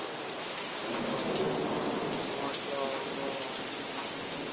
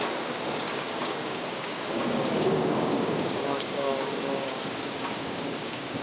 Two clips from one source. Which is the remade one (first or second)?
second